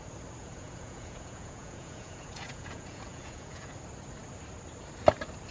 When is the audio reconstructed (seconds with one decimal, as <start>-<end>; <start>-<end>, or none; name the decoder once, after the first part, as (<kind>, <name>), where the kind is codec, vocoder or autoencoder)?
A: 0.4-3.7 (vocoder, Vocos)